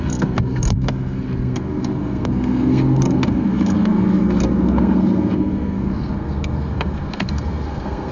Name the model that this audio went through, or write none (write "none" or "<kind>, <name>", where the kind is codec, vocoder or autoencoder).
codec, SNAC